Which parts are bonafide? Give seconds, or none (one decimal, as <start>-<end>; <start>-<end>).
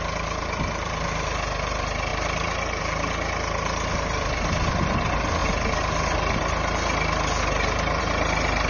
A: 0.0-8.7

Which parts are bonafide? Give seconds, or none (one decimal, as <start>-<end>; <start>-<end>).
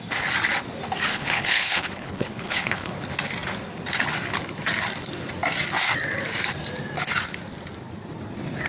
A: 0.0-1.1; 2.9-8.7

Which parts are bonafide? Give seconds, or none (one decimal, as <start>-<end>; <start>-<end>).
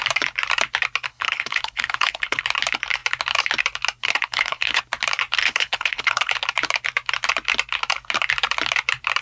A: 0.0-1.1; 2.4-4.0; 4.8-5.4; 6.3-9.2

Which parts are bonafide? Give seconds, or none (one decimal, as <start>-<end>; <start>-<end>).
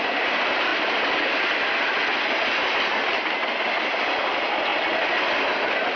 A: 0.0-6.0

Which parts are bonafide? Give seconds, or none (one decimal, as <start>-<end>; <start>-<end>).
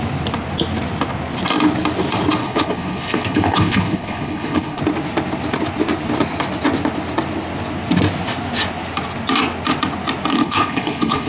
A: 0.0-2.4; 4.8-10.3